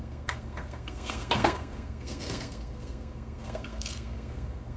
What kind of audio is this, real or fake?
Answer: fake